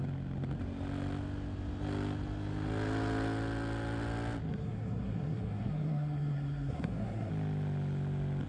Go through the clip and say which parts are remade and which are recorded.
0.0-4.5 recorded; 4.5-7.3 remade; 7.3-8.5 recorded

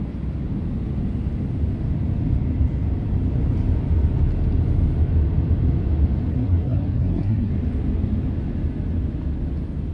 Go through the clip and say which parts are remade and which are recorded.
0.0-6.3 recorded; 6.3-7.5 remade; 7.5-9.9 recorded

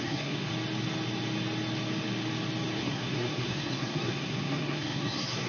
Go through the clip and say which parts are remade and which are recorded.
0.0-0.5 remade; 0.5-2.8 recorded; 2.8-5.5 remade

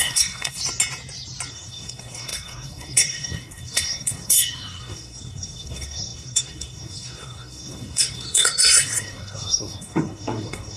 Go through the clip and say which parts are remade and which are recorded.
0.0-0.6 remade; 0.6-1.5 recorded; 1.5-10.8 remade

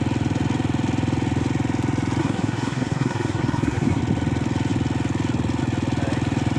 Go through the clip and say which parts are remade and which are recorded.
0.0-2.2 recorded; 2.2-4.0 remade; 4.0-6.6 recorded

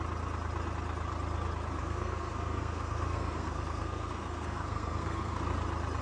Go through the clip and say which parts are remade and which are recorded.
0.0-1.8 recorded; 1.8-5.4 remade; 5.4-6.0 recorded

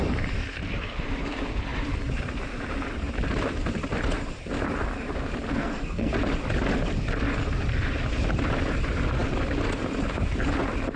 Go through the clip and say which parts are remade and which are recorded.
0.0-5.5 recorded; 5.5-6.1 remade; 6.1-11.0 recorded